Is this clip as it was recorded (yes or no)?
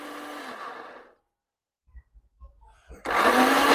yes